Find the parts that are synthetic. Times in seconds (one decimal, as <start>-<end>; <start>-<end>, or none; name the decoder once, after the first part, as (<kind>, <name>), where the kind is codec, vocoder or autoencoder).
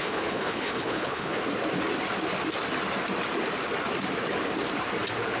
0.0-1.4 (codec, HILCodec)